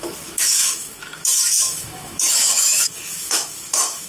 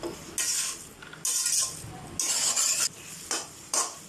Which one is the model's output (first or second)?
first